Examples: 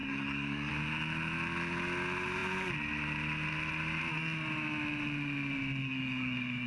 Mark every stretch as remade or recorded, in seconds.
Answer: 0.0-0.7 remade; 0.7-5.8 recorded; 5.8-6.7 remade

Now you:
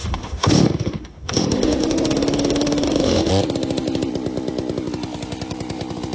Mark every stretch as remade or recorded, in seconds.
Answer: 0.0-3.3 remade; 3.3-6.1 recorded

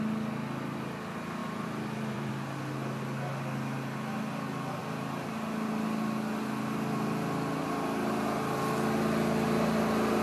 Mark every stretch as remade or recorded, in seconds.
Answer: 0.0-1.4 recorded; 1.4-2.3 remade; 2.3-10.2 recorded

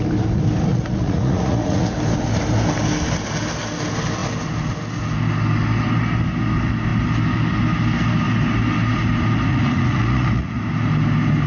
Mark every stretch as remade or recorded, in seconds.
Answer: 0.0-0.7 recorded; 0.7-1.9 remade; 1.9-9.5 recorded; 9.5-10.6 remade; 10.6-11.5 recorded

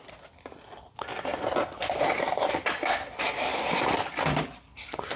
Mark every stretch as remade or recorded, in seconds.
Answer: 0.0-3.5 recorded; 3.5-4.0 remade; 4.0-5.2 recorded

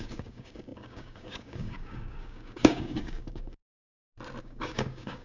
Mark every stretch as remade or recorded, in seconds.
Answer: 0.0-3.6 remade; 3.6-4.4 recorded; 4.4-5.2 remade

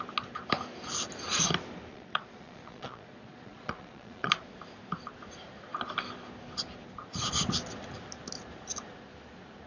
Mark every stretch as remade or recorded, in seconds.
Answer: 0.0-1.9 recorded; 1.9-4.3 remade; 4.3-9.7 recorded